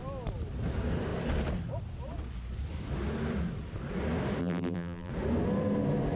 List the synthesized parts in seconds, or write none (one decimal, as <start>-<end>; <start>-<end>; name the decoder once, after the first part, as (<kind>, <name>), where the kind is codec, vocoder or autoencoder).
4.4-5.1 (vocoder, BigVGAN v2)